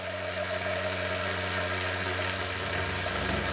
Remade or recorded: recorded